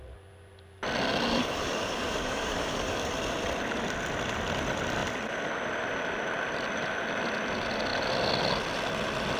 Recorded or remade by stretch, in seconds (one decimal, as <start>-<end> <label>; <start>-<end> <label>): 0.0-1.4 recorded; 1.4-3.1 remade; 3.1-9.4 recorded